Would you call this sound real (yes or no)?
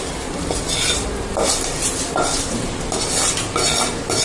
yes